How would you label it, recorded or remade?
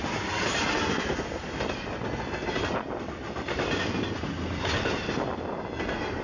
recorded